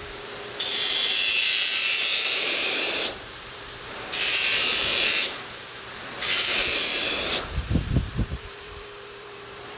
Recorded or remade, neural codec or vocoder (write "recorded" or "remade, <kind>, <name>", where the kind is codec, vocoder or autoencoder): remade, vocoder, BigVGAN v2